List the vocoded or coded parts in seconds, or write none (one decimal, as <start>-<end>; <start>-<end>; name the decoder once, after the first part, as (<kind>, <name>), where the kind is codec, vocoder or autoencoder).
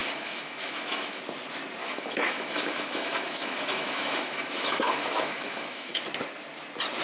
0.0-1.2 (autoencoder, DAC-VAE); 1.8-6.0